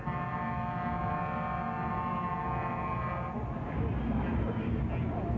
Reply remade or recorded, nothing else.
recorded